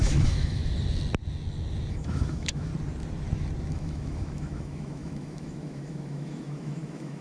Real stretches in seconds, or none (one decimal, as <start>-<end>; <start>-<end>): 0.6-1.9; 2.7-3.7